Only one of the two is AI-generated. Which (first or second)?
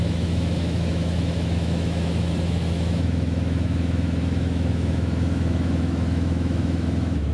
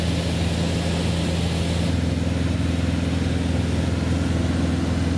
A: first